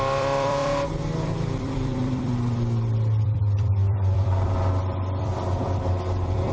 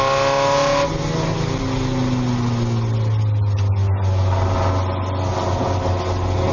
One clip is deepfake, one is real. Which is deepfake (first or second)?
first